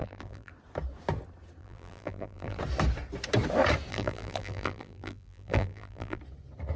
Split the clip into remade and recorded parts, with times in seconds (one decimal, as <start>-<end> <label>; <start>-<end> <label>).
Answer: 0.0-0.5 remade; 0.5-1.6 recorded; 1.6-2.6 remade; 2.6-3.9 recorded; 3.9-6.2 remade; 6.2-6.8 recorded